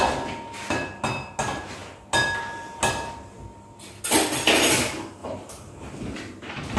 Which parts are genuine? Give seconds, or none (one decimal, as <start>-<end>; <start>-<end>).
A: 0.0-5.2